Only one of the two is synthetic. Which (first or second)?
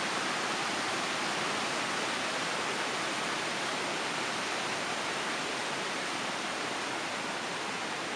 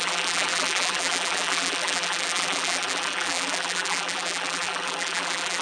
second